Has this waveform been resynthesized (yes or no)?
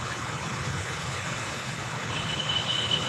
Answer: yes